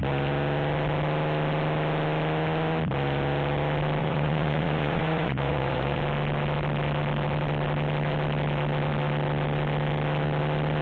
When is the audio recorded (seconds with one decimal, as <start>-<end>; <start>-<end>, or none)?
0.0-4.0; 6.0-10.8